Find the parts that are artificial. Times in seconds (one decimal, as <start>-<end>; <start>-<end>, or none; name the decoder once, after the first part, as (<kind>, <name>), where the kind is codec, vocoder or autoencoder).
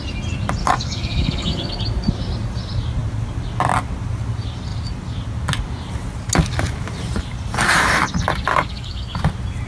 0.6-1.7 (codec, DAC); 8.5-9.2